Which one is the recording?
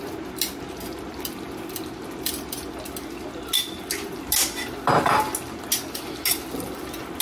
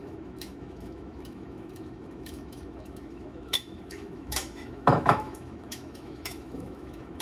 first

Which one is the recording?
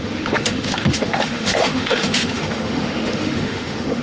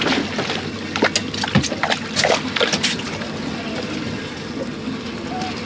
second